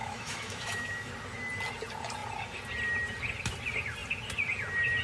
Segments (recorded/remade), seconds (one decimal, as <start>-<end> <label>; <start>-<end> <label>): 0.0-1.1 remade; 1.1-5.0 recorded